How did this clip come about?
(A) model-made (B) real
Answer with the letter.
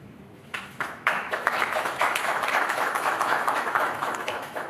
A